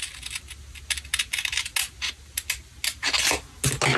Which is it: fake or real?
real